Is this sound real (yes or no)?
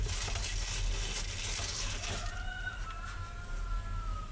yes